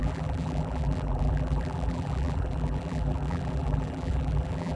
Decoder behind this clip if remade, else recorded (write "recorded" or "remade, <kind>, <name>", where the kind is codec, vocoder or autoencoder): remade, vocoder, BigVGAN v2